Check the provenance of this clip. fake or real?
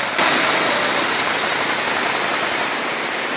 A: real